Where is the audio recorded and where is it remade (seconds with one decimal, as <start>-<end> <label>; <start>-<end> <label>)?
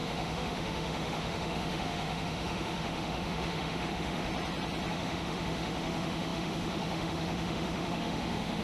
0.0-4.3 remade; 4.3-4.9 recorded; 4.9-8.6 remade